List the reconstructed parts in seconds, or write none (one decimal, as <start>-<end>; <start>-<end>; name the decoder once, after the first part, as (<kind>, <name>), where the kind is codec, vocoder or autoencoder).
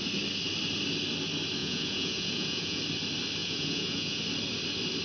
1.6-2.8 (vocoder, Vocos); 3.4-4.2